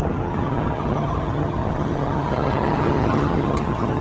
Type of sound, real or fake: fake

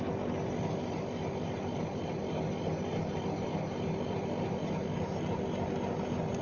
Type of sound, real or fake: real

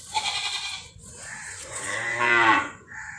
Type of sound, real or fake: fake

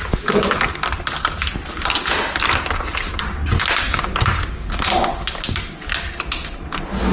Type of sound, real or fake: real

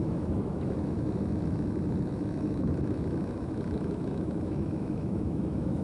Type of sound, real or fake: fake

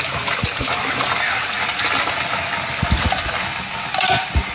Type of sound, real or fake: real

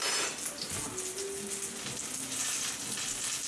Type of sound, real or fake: real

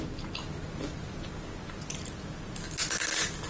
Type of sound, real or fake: real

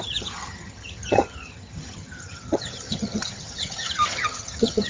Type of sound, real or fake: fake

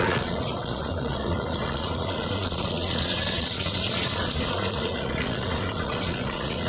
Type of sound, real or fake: fake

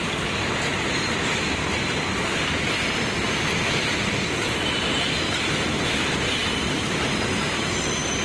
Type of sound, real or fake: real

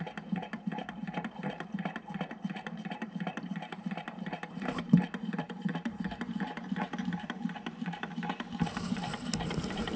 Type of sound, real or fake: fake